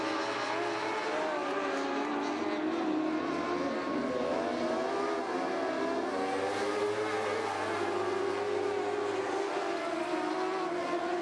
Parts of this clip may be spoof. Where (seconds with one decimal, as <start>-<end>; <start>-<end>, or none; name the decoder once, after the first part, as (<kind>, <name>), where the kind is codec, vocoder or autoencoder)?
none